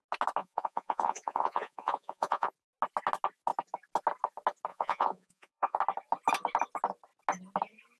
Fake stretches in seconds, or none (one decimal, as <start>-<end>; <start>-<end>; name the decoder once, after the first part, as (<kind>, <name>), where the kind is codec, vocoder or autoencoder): 0.4-2.5 (vocoder, Vocos); 4.7-5.8

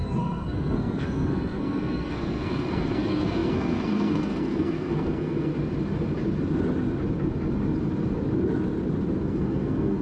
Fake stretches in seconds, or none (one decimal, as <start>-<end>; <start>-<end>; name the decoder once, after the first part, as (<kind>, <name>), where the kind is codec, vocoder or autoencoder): 0.0-5.5 (codec, SNAC); 9.2-10.0